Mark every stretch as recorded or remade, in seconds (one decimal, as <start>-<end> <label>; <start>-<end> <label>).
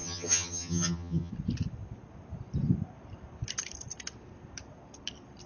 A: 0.0-1.3 remade; 1.3-5.5 recorded